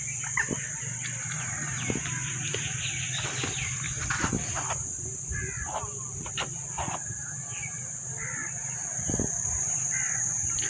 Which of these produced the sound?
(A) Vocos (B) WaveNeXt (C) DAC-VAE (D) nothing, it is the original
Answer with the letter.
D